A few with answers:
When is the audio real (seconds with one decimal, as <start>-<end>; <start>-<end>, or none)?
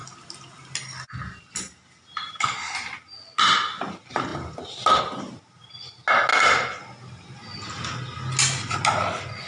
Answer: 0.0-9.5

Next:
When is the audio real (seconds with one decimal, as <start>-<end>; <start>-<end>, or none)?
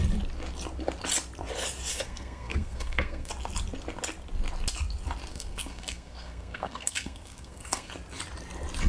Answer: 0.0-1.9; 3.3-5.3; 7.9-8.9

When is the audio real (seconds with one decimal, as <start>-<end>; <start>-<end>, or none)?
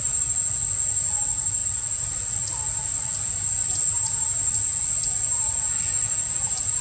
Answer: 0.0-6.8